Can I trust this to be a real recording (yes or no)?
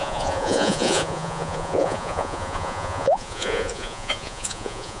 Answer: no